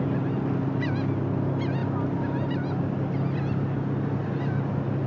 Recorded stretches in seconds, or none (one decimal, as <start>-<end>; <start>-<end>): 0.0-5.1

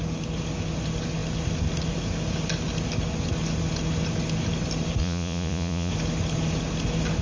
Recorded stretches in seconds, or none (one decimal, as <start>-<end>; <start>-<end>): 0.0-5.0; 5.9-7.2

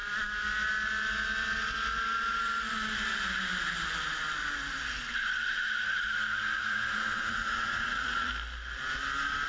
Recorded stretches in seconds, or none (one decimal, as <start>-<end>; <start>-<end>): 0.0-6.6; 8.3-9.5

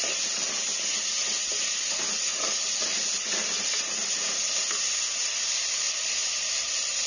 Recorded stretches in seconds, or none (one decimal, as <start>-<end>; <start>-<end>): 0.0-7.1